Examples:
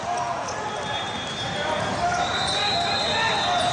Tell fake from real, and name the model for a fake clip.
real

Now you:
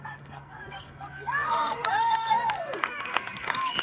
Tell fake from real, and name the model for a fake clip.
fake, codec, SNAC